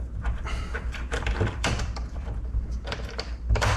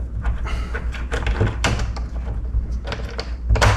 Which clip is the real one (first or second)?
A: second